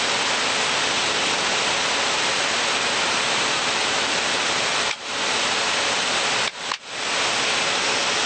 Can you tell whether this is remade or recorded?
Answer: recorded